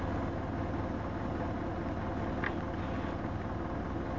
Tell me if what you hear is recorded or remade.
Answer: recorded